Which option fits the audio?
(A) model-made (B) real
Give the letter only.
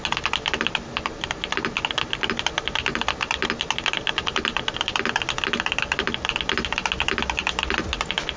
B